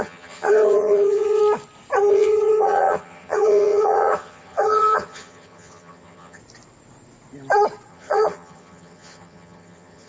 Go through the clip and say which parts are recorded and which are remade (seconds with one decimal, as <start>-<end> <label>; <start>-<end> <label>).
0.0-1.4 remade; 1.4-2.1 recorded; 2.1-6.4 remade; 6.4-7.9 recorded; 7.9-10.1 remade